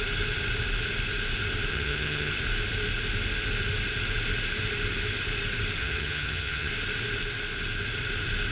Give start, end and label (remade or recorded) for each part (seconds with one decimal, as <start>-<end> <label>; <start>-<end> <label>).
0.0-1.7 recorded; 1.7-2.3 remade; 2.3-5.8 recorded; 5.8-6.7 remade; 6.7-8.5 recorded